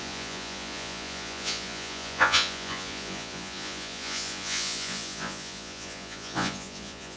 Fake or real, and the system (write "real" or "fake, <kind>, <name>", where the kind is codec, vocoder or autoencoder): fake, vocoder, Vocos